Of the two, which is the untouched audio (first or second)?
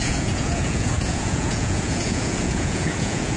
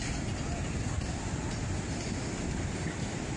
second